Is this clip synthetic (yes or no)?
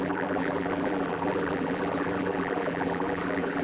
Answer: yes